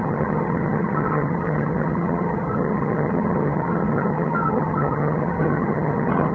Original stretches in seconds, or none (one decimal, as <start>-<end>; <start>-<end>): none